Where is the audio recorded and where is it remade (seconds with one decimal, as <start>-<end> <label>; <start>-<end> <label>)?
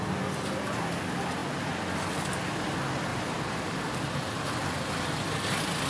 0.0-3.1 recorded; 3.1-4.4 remade; 4.4-5.9 recorded